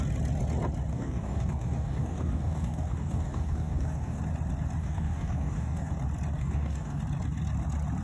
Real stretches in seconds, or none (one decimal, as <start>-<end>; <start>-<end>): 0.0-0.9; 4.2-4.8; 5.9-6.4; 7.0-8.0